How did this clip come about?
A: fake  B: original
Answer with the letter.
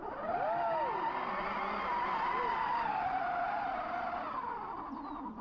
B